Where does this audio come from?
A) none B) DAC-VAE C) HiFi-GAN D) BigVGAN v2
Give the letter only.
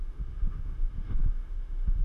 B